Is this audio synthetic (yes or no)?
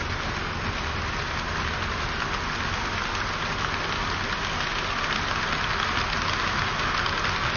no